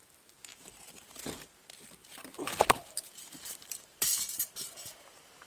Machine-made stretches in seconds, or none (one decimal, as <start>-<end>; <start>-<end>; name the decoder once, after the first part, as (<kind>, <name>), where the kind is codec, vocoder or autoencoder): 0.5-1.2 (vocoder, BigVGAN v2); 2.0-5.5